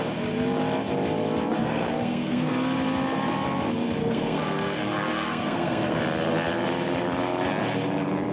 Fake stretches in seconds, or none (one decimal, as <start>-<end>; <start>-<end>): 1.6-2.5; 4.0-6.0